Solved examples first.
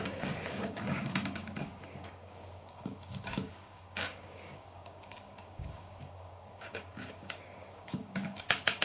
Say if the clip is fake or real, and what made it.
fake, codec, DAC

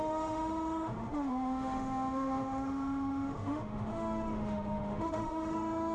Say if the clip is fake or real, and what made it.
fake, autoencoder, DAC-VAE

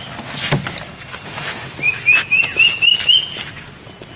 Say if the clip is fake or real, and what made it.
real